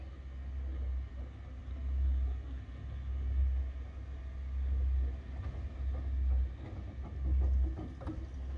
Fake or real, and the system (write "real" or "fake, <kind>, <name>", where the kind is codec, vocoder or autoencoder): real